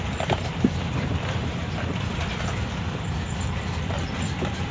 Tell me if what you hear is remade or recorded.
remade